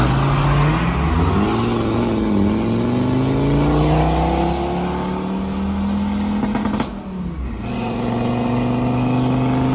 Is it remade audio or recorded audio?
recorded